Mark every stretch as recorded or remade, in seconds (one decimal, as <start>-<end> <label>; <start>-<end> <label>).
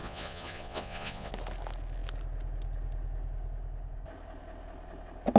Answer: 0.0-1.3 remade; 1.3-5.4 recorded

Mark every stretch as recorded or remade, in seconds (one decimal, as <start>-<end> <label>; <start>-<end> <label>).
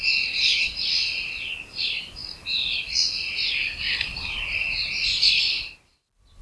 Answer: 0.0-6.4 recorded